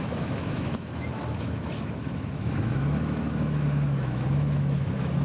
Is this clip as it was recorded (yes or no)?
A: no